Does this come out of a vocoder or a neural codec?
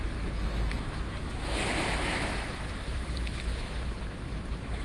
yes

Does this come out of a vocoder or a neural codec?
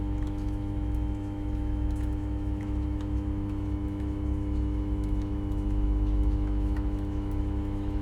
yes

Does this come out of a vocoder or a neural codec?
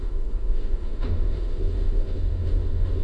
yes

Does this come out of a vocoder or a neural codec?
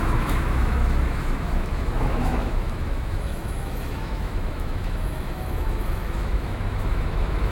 yes